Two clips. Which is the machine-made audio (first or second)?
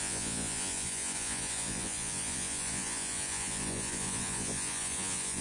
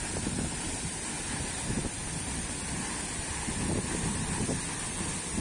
first